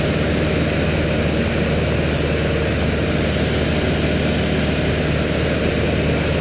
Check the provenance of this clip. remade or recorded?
recorded